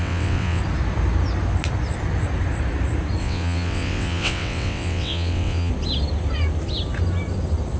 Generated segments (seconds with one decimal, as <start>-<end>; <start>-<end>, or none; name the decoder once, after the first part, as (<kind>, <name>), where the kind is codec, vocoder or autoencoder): 0.0-0.6 (vocoder, WaveNeXt); 3.2-5.7